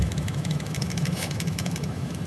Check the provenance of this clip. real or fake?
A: fake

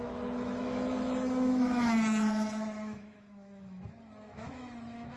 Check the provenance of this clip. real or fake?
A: fake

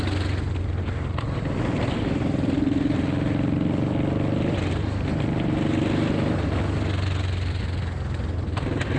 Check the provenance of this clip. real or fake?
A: real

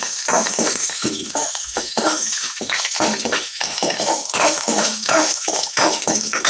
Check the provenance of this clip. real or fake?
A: fake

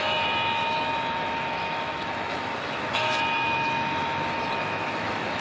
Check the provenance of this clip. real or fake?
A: fake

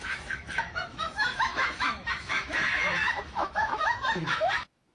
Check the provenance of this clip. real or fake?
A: fake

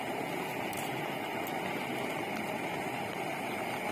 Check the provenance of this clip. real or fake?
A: real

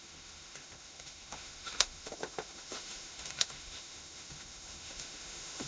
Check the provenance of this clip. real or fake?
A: fake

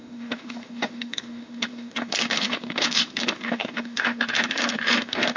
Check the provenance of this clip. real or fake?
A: fake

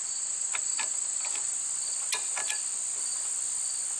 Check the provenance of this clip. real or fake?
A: real